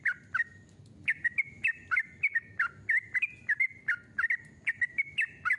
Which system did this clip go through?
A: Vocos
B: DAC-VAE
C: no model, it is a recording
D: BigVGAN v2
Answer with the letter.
C